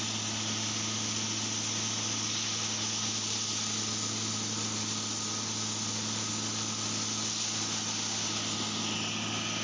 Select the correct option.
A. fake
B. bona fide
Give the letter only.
B